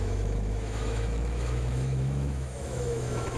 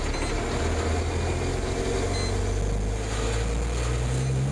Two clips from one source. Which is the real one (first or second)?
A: second